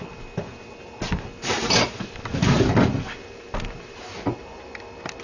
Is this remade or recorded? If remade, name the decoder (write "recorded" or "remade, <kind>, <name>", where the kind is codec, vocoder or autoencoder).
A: recorded